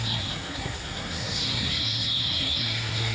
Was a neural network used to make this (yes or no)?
yes